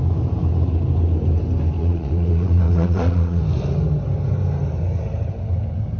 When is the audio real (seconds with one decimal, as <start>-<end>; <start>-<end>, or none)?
0.0-1.8; 3.4-6.0